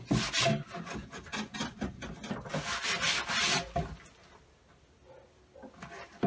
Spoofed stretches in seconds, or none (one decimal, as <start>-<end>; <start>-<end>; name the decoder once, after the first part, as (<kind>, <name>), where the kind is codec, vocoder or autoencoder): none